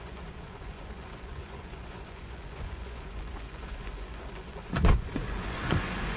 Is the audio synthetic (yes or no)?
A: yes